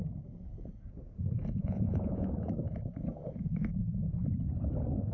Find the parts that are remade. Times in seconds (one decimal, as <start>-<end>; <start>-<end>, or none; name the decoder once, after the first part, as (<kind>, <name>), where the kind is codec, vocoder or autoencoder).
1.6-2.3 (vocoder, Vocos)